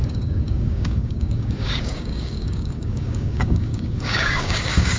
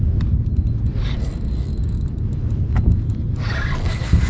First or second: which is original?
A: second